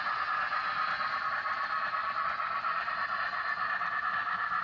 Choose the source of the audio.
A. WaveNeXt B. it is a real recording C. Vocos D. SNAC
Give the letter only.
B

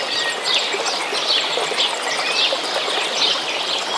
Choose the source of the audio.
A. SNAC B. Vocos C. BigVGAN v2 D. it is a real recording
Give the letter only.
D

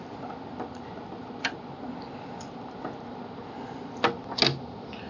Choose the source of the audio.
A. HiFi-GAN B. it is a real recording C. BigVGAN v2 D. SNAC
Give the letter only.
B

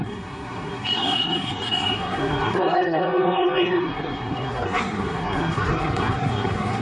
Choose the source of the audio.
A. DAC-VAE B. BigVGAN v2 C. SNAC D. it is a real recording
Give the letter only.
C